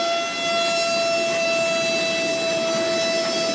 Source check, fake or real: real